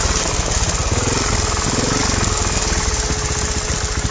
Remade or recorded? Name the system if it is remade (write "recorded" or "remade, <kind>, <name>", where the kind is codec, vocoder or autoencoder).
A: recorded